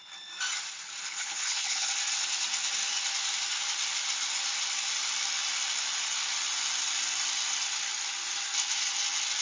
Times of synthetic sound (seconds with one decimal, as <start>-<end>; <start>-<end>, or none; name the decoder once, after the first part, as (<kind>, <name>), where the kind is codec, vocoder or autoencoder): 1.0-1.9 (codec, HILCodec)